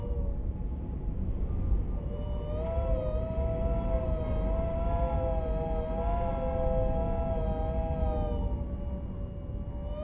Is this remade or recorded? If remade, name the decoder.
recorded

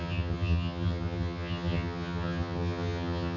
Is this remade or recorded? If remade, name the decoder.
remade, vocoder, HiFi-GAN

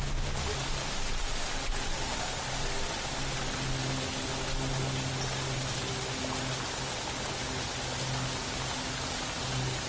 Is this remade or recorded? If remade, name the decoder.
recorded